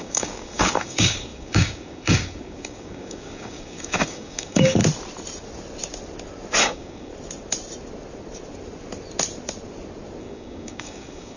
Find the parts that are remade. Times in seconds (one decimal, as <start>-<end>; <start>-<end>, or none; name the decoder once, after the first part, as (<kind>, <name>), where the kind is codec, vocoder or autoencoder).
0.0-4.8 (codec, DAC); 6.6-7.1; 10.2-11.4